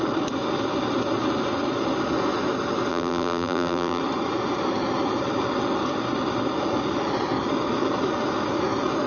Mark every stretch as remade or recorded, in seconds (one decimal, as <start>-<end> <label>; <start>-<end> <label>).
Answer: 0.0-2.9 recorded; 2.9-4.0 remade; 4.0-9.1 recorded

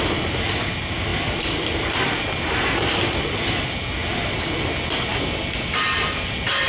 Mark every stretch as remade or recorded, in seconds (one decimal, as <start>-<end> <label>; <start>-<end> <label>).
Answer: 0.0-1.1 recorded; 1.1-2.0 remade; 2.0-5.1 recorded; 5.1-6.3 remade; 6.3-6.7 recorded

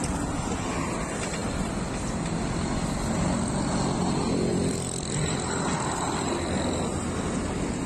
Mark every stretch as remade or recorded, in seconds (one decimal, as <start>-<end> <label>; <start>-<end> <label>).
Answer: 0.0-1.4 recorded; 1.4-3.5 remade; 3.5-4.5 recorded; 4.5-5.7 remade; 5.7-7.9 recorded

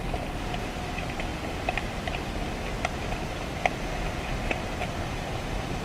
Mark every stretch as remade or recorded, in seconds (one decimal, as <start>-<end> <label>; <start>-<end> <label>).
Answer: 0.0-1.3 recorded; 1.3-1.9 remade; 1.9-5.8 recorded

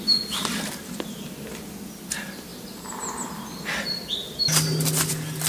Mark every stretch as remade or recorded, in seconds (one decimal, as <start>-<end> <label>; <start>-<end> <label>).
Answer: 0.0-5.5 recorded

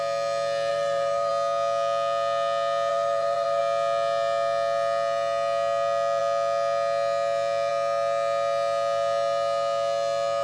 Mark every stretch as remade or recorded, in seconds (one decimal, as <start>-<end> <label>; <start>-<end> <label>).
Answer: 0.0-0.7 recorded; 0.7-1.3 remade; 1.3-2.9 recorded; 2.9-3.6 remade; 3.6-10.4 recorded

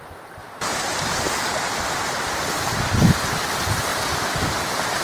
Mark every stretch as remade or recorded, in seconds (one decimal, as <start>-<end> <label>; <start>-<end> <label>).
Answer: 0.0-0.4 recorded; 0.4-1.2 remade; 1.2-3.9 recorded; 3.9-5.0 remade